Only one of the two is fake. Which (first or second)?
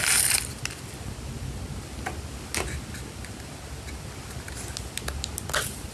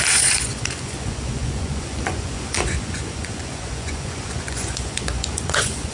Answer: second